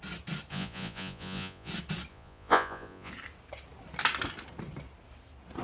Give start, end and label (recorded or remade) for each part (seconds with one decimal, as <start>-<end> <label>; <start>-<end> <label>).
0.0-0.5 recorded; 0.5-1.7 remade; 1.7-2.1 recorded; 2.1-3.1 remade; 3.1-5.6 recorded